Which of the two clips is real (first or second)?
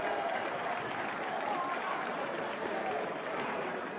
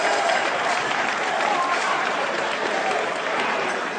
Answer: first